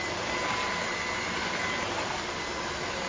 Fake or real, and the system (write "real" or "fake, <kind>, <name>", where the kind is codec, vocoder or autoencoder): real